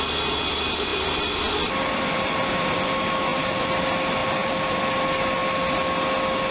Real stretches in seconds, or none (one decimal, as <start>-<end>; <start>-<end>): 0.0-0.9; 2.9-3.3; 3.8-4.2; 4.8-6.5

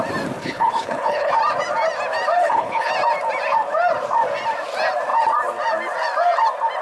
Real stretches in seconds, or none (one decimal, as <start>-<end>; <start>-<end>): 0.0-0.4; 1.3-2.4; 2.9-6.8

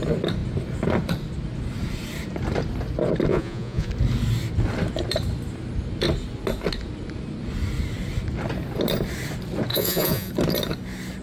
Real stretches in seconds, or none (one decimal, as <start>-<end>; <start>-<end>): 0.0-3.3; 3.9-9.7; 10.3-11.2

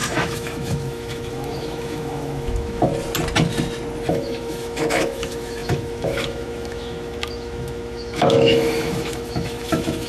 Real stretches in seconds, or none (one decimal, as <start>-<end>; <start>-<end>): 2.9-4.1

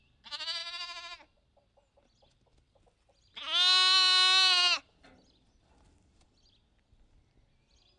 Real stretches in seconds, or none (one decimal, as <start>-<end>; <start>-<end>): 0.0-8.0